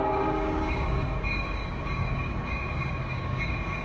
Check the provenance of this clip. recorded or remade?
remade